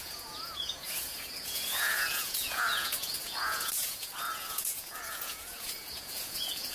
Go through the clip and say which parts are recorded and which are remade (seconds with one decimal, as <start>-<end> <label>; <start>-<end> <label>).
0.0-6.7 remade